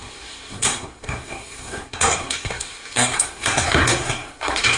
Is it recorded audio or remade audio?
remade